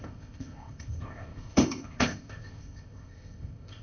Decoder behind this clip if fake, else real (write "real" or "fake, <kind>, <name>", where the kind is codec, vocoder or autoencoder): fake, codec, ZipCodec